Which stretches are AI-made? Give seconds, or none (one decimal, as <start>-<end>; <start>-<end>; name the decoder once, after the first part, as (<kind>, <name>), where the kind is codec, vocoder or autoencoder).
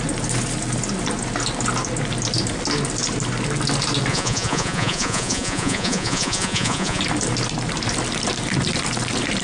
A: 4.1-7.0 (vocoder, Vocos)